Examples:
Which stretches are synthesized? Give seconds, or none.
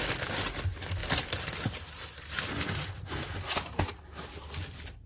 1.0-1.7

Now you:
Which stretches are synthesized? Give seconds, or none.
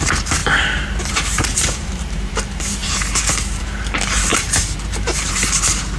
0.0-0.4; 1.1-6.0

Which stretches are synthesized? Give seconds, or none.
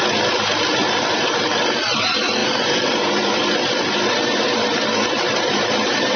0.8-1.6; 2.4-6.2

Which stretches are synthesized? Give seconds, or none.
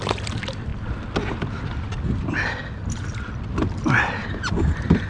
4.2-5.1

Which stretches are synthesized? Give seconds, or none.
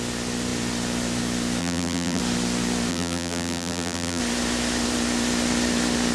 1.6-2.2; 2.9-4.2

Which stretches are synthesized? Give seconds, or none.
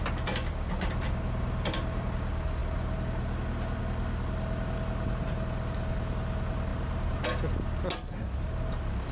6.7-7.2